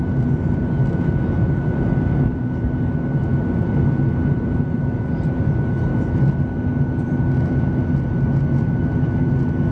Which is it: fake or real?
real